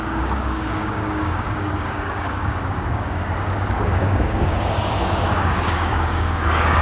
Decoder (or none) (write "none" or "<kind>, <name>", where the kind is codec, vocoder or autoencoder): codec, DAC